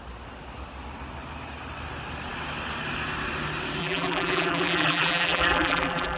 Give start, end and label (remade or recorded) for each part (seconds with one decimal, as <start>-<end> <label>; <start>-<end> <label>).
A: 0.0-3.8 recorded; 3.8-6.2 remade